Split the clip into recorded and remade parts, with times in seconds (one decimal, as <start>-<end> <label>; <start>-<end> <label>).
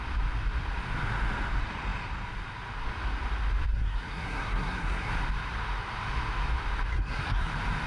0.0-3.7 recorded; 3.7-5.1 remade; 5.1-6.9 recorded; 6.9-7.5 remade; 7.5-7.9 recorded